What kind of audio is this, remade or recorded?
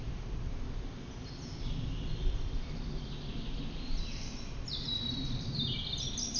recorded